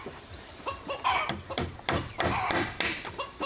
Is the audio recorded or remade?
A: recorded